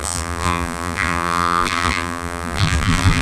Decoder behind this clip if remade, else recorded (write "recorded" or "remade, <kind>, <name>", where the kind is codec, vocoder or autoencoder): remade, vocoder, BigVGAN v2